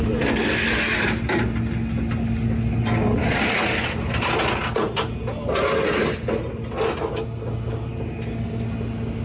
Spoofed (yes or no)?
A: no